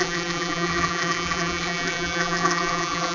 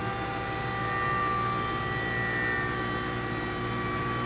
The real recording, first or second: second